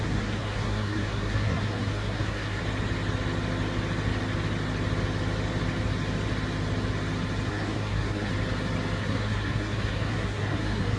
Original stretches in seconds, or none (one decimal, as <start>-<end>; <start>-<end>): 2.6-7.5; 8.3-9.0